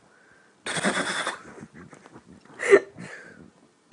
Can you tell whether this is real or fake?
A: real